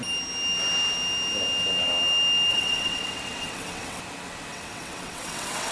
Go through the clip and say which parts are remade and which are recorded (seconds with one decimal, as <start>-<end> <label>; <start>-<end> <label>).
0.0-2.5 recorded; 2.5-4.0 remade; 4.0-4.5 recorded; 4.5-5.7 remade